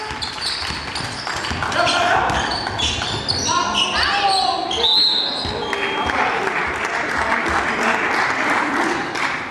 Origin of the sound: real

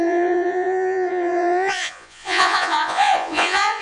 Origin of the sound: fake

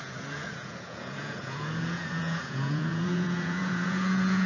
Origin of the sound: fake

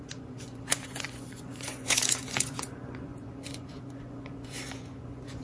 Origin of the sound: fake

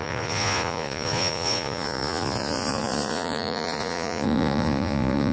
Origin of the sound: fake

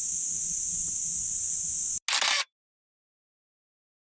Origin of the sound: real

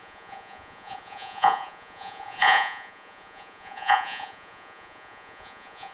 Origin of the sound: fake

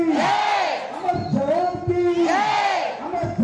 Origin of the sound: real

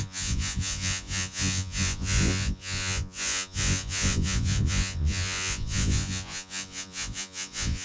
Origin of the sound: fake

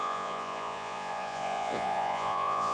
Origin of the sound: fake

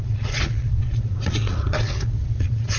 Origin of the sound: fake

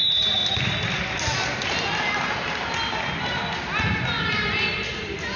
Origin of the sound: real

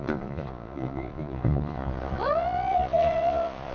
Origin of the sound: fake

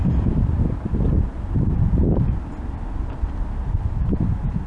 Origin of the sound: real